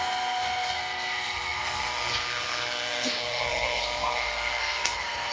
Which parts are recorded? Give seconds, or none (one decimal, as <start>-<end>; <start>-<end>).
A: none